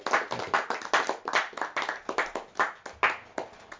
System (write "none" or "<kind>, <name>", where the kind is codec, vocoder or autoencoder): none